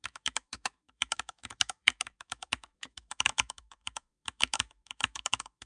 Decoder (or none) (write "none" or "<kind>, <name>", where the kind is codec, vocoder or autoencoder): autoencoder, DAC-VAE